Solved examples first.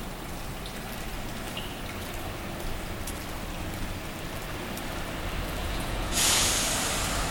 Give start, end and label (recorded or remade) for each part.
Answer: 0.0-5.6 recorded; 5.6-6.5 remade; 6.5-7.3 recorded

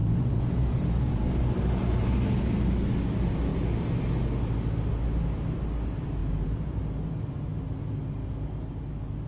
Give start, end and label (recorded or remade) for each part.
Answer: 0.0-1.3 remade; 1.3-6.2 recorded; 6.2-6.8 remade; 6.8-9.3 recorded

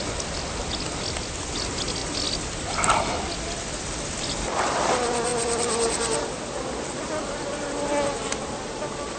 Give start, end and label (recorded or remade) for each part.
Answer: 0.0-9.2 recorded

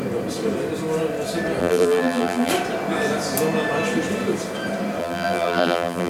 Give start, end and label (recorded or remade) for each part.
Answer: 0.0-1.6 recorded; 1.6-2.5 remade; 2.5-5.0 recorded; 5.0-6.1 remade

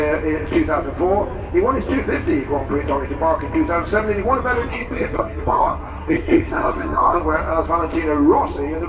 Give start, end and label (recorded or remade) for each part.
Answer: 0.0-4.7 recorded; 4.7-7.2 remade; 7.2-8.9 recorded

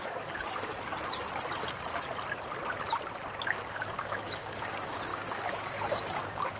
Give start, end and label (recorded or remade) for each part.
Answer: 0.0-0.7 remade; 0.7-3.5 recorded; 3.5-6.6 remade

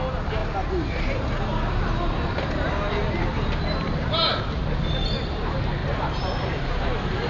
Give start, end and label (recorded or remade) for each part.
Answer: 0.0-5.8 recorded; 5.8-7.3 remade